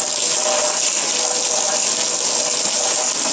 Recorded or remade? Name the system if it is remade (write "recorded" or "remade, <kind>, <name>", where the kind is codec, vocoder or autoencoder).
recorded